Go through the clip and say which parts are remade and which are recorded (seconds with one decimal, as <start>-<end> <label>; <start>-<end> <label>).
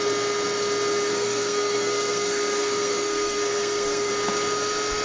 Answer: 0.0-1.1 recorded; 1.1-4.1 remade; 4.1-5.0 recorded